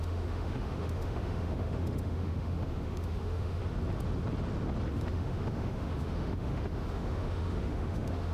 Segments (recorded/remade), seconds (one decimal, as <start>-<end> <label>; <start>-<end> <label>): 0.0-3.6 remade; 3.6-4.9 recorded; 4.9-8.3 remade